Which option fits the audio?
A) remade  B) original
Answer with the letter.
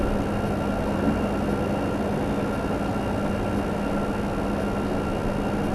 B